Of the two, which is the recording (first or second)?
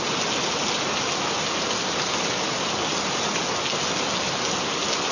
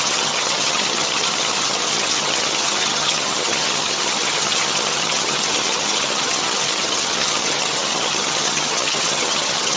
first